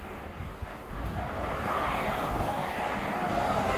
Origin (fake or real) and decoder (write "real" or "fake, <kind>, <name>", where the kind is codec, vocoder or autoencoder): fake, codec, DAC